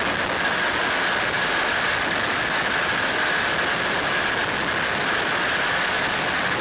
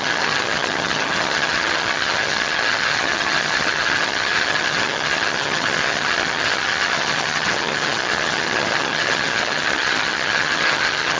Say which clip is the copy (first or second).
second